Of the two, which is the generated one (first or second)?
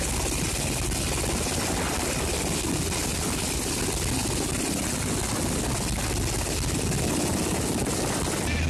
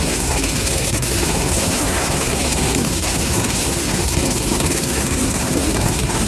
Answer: second